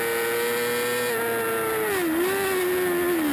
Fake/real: real